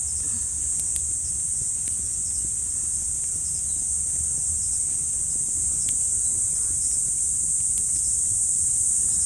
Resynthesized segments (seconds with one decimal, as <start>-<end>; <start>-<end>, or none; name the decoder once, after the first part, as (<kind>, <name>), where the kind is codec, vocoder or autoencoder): 1.5-2.5 (vocoder, Vocos)